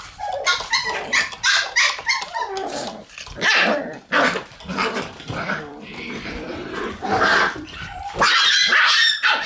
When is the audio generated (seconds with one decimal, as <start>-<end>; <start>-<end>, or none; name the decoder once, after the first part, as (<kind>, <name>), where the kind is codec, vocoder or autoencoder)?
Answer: 0.0-9.5 (vocoder, BigVGAN v2)